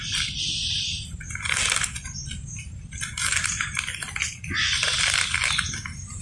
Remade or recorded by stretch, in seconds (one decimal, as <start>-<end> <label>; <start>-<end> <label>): 0.0-6.2 recorded